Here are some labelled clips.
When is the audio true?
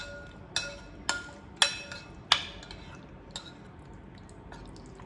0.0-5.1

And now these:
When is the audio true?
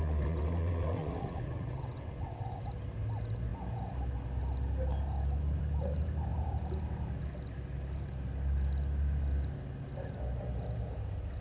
2.6-11.4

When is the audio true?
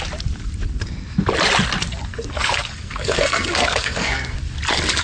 0.0-1.9; 4.4-5.0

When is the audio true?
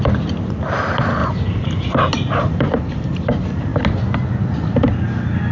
0.0-5.5